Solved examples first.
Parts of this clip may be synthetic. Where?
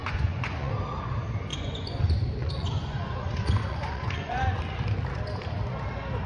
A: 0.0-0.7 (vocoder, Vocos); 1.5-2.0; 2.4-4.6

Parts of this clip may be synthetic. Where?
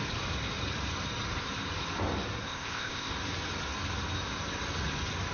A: 2.4-3.1 (codec, ZipCodec)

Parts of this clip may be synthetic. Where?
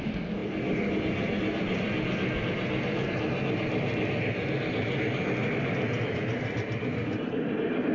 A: none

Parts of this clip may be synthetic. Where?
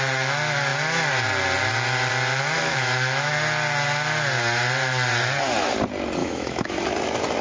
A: 2.6-3.3 (autoencoder, DAC-VAE); 6.2-6.8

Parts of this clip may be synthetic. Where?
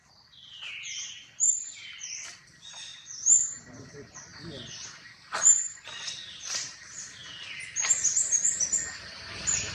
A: 0.0-2.9 (vocoder, BigVGAN v2); 3.5-4.3; 5.3-7.2; 8.6-9.7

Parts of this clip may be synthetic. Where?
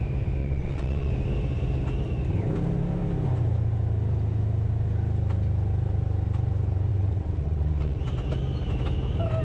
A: 0.4-1.1 (vocoder, WaveNeXt); 6.9-8.0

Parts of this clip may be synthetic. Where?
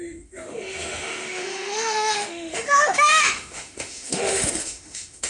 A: 0.0-5.3 (autoencoder, DAC-VAE)